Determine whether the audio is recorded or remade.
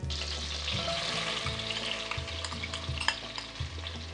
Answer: recorded